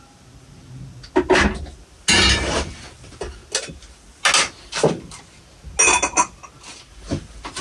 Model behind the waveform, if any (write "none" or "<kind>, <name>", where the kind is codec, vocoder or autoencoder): none